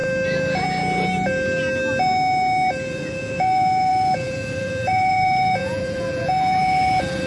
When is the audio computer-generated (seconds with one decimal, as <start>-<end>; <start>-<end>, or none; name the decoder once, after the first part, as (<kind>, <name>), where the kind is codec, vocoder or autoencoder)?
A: 2.9-7.3 (vocoder, Vocos)